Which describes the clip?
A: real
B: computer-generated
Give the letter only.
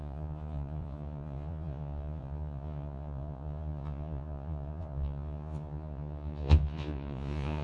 B